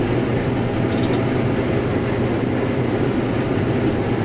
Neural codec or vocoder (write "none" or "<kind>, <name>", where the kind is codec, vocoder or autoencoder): none